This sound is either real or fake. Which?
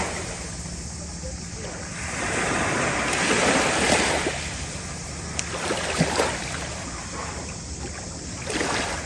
real